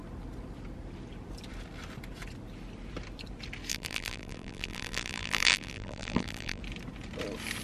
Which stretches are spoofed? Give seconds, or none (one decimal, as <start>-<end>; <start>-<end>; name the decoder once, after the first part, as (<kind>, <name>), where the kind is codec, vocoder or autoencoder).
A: 3.7-6.6 (vocoder, BigVGAN v2)